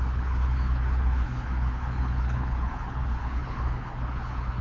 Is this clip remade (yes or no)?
yes